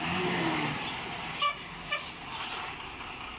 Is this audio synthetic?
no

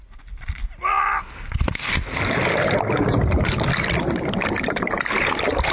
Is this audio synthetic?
no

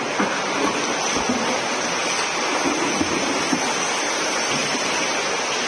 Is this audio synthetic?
no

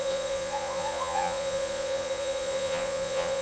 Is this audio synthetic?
yes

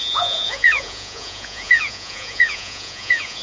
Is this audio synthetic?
yes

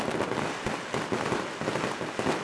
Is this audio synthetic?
no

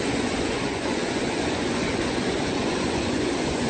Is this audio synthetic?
yes